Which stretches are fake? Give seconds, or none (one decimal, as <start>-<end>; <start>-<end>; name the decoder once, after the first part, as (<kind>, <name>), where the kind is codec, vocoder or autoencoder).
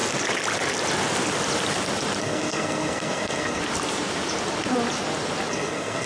2.2-3.6 (codec, SNAC); 5.5-6.1